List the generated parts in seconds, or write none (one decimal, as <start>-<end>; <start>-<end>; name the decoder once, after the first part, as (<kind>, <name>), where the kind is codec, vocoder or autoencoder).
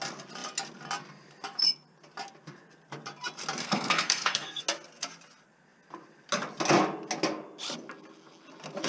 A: 3.6-4.6 (codec, SNAC)